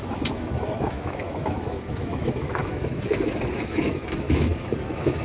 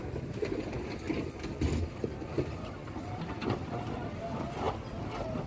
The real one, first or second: second